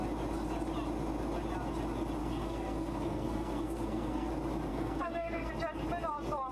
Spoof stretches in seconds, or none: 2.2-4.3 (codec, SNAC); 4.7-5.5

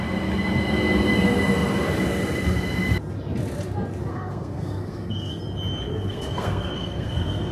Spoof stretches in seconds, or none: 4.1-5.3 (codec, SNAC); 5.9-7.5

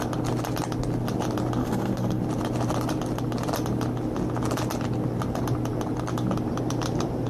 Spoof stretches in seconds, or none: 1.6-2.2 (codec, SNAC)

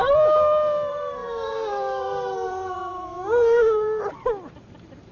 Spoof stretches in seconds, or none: 0.9-4.0 (codec, SNAC)

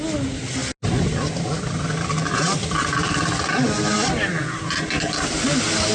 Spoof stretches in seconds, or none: none

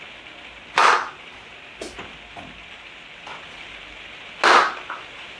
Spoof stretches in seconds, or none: none

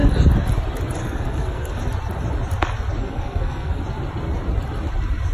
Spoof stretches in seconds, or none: 1.0-1.8 (codec, SNAC); 3.0-3.8

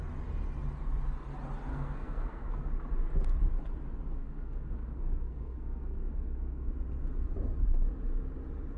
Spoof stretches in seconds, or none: 1.7-2.7 (codec, SNAC); 4.2-6.7